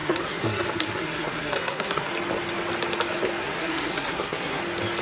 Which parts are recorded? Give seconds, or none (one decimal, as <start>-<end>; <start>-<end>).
2.1-3.4; 4.6-5.0